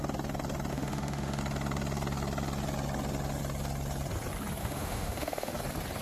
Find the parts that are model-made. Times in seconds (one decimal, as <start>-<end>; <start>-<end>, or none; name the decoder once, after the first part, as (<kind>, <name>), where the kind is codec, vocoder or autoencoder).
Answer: 0.7-1.4 (autoencoder, DAC-VAE); 4.6-5.5